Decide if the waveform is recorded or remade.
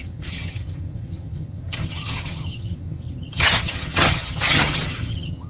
remade